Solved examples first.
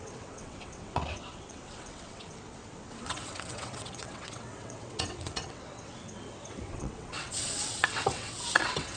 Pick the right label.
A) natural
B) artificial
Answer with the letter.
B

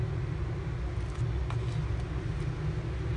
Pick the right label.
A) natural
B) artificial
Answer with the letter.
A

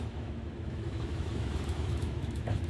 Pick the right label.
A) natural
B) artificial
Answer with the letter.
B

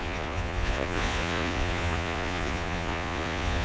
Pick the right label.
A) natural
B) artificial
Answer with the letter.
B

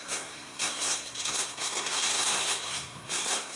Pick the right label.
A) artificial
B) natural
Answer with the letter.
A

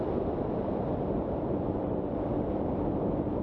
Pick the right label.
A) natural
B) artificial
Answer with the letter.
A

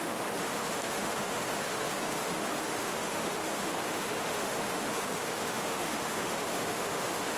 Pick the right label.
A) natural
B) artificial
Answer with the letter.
B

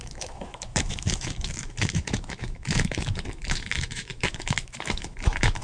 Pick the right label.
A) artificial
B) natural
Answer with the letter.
A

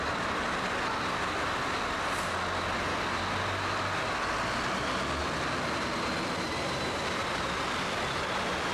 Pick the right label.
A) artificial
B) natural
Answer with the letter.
B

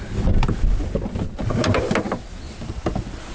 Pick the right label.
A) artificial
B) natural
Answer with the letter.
B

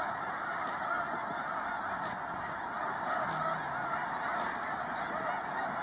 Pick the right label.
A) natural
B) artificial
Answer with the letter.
A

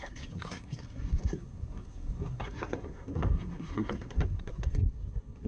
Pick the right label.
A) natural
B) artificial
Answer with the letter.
B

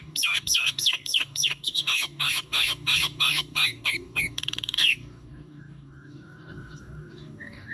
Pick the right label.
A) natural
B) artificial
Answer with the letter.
B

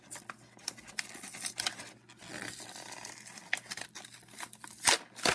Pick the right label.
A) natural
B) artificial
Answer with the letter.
A